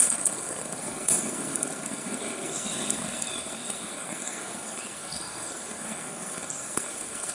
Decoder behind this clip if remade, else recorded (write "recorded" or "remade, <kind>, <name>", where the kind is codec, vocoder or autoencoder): remade, codec, SNAC